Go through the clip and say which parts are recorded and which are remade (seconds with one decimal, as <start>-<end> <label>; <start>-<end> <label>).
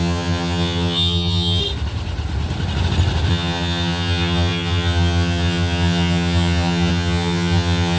0.0-1.6 remade; 1.6-3.3 recorded; 3.3-8.0 remade